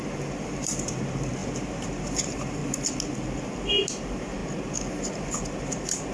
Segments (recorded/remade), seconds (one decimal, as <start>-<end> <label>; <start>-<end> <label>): 0.0-2.6 remade; 2.6-3.7 recorded; 3.7-4.4 remade; 4.4-5.1 recorded; 5.1-6.1 remade